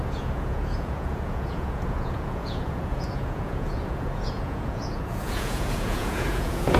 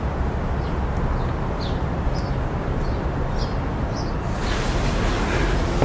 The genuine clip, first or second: second